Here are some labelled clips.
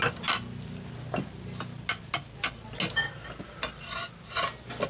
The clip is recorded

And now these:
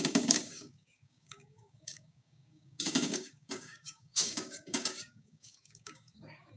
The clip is remade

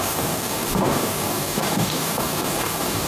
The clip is remade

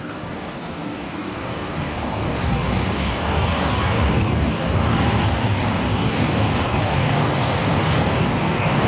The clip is remade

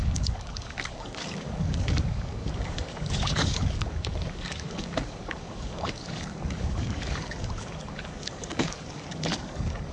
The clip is remade